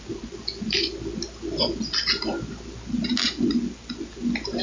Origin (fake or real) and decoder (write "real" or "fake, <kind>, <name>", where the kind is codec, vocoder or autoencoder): real